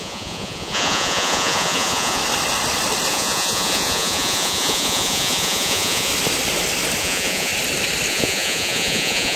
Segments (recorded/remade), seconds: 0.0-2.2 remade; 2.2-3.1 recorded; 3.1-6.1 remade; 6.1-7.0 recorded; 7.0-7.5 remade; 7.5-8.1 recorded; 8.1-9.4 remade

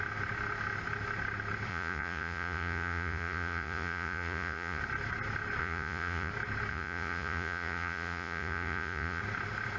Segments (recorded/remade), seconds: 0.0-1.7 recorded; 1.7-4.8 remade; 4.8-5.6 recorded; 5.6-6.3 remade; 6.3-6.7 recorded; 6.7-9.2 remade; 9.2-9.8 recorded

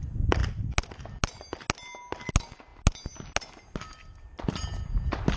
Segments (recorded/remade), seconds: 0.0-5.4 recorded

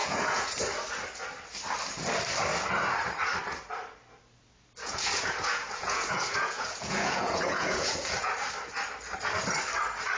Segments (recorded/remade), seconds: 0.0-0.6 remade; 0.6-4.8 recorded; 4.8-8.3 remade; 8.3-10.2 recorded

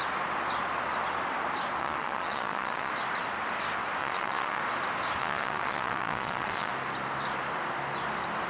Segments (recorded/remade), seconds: 0.0-1.8 recorded; 1.8-2.9 remade; 2.9-4.0 recorded; 4.0-4.6 remade; 4.6-5.2 recorded; 5.2-6.7 remade; 6.7-8.5 recorded

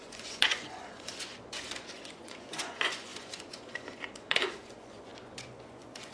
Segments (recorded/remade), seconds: 0.0-6.1 remade

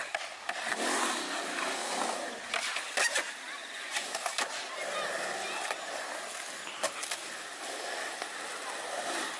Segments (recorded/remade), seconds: 0.0-3.6 recorded; 3.6-4.2 remade; 4.2-9.4 recorded

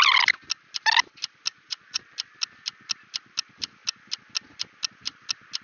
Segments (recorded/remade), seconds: 0.0-1.5 recorded; 1.5-2.0 remade; 2.0-5.6 recorded